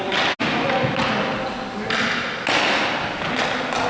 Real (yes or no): yes